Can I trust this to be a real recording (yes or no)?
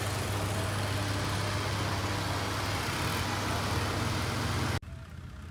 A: yes